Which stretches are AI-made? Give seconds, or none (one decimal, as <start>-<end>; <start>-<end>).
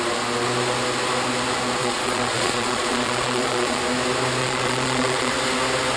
1.8-3.8; 4.4-5.3